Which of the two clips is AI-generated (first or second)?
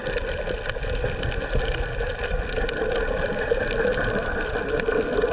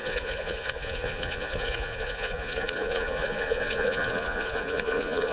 second